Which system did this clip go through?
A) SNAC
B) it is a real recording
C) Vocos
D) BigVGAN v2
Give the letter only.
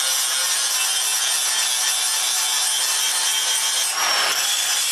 B